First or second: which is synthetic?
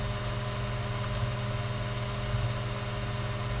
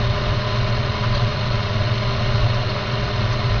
second